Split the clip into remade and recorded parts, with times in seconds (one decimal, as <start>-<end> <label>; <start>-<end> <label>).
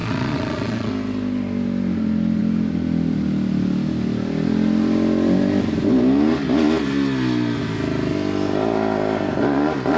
0.0-0.9 remade; 0.9-10.0 recorded